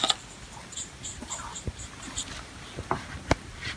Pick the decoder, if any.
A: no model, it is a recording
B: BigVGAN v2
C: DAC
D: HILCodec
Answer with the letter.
A